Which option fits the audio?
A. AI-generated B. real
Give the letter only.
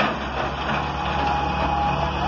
B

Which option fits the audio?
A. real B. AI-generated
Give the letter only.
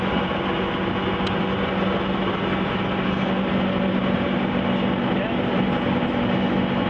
A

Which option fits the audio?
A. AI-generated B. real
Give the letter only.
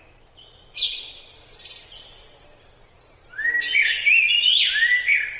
B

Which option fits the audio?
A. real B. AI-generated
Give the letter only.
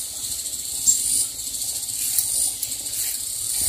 A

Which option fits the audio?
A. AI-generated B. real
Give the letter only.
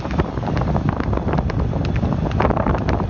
A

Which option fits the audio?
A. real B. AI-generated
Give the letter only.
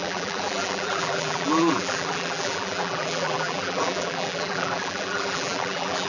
B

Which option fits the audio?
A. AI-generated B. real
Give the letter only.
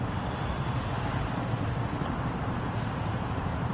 A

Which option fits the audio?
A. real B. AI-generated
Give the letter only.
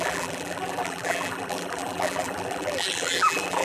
B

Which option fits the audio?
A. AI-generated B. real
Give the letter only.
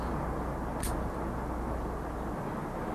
B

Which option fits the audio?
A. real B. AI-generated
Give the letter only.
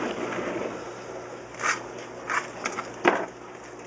A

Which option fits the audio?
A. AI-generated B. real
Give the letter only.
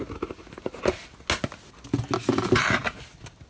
B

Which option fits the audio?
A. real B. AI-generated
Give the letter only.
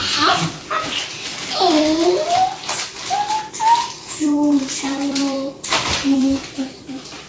B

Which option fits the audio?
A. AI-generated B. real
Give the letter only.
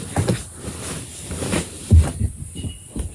B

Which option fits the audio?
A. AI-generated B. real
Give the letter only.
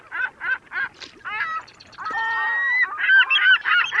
B